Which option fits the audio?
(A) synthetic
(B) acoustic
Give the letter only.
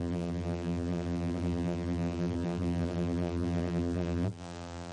A